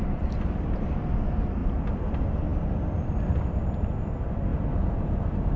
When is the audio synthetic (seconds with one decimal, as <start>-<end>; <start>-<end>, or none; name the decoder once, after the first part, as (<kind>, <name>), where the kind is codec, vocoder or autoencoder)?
1.6-2.1 (vocoder, BigVGAN v2); 2.5-4.0